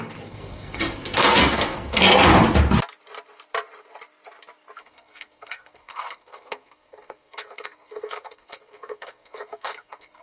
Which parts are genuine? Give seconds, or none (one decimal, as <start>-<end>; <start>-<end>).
2.2-4.8